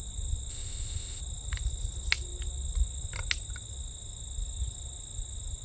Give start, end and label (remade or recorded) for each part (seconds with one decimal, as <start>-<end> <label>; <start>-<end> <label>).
0.0-0.5 recorded; 0.5-1.2 remade; 1.2-5.6 recorded